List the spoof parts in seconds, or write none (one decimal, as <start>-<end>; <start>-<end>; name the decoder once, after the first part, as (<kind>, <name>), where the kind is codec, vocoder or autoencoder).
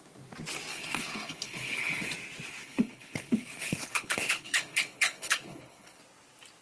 0.7-2.1 (codec, HILCodec); 2.6-6.0